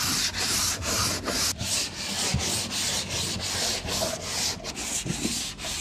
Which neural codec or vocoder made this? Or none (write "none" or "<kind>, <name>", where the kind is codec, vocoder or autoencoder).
none